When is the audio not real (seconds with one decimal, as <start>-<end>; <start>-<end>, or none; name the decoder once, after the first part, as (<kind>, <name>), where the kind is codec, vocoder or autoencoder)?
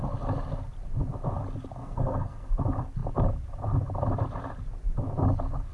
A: 1.8-2.5 (codec, SNAC)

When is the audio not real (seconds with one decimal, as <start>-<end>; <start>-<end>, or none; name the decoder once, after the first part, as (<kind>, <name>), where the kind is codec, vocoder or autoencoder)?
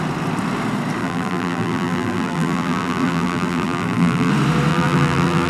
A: 1.0-4.3 (vocoder, BigVGAN v2); 4.7-5.5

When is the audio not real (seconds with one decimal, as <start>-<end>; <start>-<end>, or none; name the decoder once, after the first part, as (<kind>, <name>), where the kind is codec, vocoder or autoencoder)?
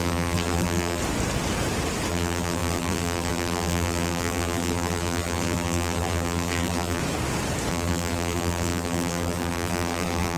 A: 0.0-1.0 (vocoder, BigVGAN v2); 2.1-7.0; 7.7-10.4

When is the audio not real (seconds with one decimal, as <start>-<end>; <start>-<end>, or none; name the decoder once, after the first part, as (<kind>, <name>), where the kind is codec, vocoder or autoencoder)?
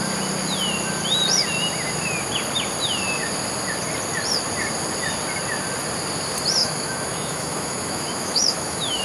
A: 6.6-9.0 (autoencoder, DAC-VAE)